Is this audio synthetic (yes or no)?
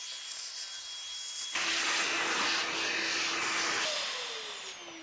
no